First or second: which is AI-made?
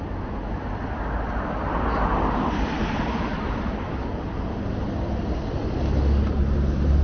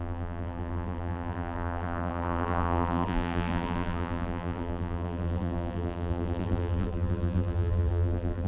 second